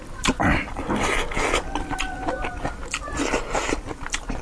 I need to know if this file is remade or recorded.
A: recorded